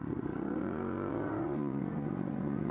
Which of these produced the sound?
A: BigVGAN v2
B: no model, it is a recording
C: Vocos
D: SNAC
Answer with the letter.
C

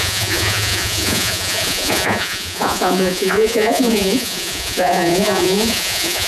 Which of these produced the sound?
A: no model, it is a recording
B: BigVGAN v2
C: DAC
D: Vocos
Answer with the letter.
D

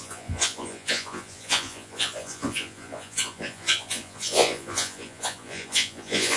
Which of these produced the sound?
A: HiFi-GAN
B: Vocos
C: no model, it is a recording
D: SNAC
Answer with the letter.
B